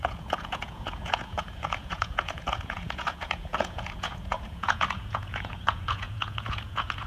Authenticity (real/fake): fake